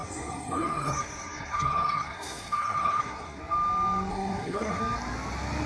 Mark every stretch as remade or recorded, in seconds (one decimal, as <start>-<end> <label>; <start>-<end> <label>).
0.0-3.4 remade; 3.4-4.1 recorded; 4.1-4.8 remade; 4.8-5.7 recorded